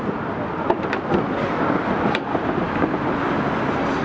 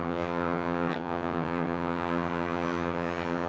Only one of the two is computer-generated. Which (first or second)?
second